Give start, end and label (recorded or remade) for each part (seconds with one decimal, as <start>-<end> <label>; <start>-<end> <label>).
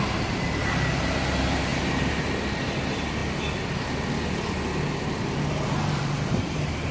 0.0-3.2 remade; 3.2-5.9 recorded; 5.9-6.9 remade